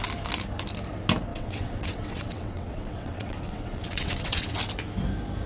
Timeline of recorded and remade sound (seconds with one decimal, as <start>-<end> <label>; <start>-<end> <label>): 0.0-1.3 recorded; 1.3-4.6 remade; 4.6-5.5 recorded